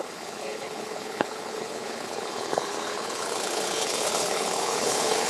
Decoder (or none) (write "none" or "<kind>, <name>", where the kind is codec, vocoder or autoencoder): codec, HILCodec